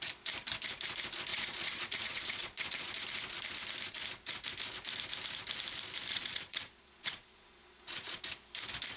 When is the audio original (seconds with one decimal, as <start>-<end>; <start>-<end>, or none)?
0.0-1.3; 2.9-6.1; 8.2-9.0